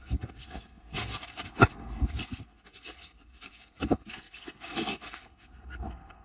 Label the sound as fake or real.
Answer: fake